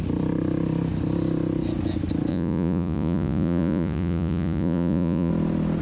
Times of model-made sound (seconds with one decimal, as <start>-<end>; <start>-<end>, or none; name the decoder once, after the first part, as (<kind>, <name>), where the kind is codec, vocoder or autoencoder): 2.3-5.3 (vocoder, Vocos)